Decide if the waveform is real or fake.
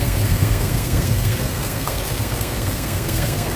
fake